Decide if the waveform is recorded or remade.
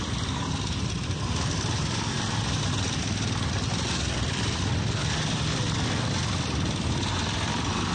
recorded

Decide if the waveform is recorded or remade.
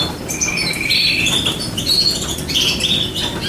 recorded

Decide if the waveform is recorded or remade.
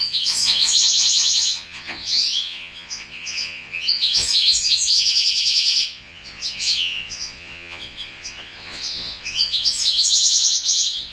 remade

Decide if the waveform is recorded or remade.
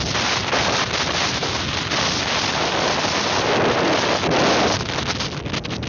recorded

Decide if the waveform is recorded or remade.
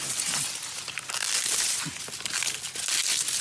recorded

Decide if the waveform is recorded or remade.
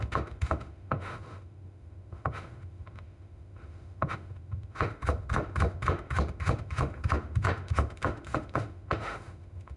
remade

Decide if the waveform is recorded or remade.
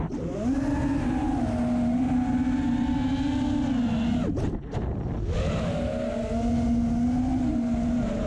recorded